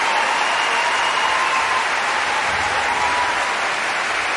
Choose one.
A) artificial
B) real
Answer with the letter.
B